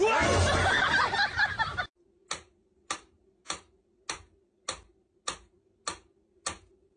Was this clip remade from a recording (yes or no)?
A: no